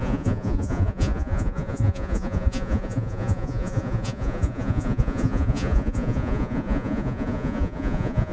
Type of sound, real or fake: fake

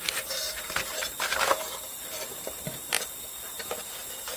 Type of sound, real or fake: fake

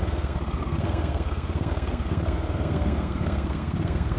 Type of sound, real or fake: fake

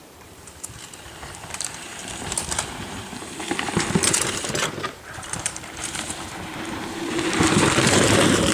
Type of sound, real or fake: fake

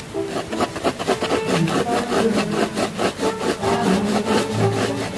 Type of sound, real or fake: real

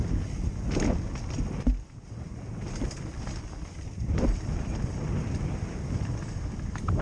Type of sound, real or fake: real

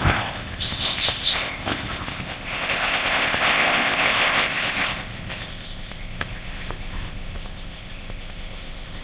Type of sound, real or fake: fake